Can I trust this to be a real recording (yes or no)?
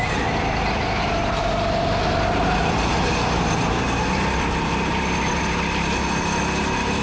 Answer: yes